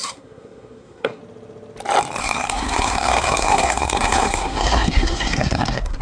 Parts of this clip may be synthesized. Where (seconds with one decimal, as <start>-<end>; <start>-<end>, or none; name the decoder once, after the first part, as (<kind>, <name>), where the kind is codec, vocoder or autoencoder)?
0.0-1.2 (codec, SNAC); 2.2-6.0